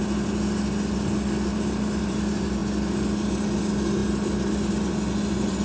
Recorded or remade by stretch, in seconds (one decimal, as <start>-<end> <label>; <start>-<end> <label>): 0.0-5.6 recorded